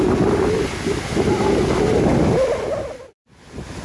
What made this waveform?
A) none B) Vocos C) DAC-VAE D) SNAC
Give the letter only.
A